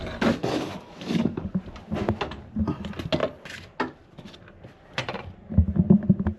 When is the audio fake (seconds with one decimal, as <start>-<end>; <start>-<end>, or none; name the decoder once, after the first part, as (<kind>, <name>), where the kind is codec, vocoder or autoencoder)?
0.4-1.5 (codec, DAC)